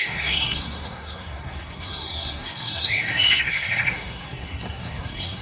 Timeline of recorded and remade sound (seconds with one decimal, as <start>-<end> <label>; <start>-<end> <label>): 0.0-5.4 remade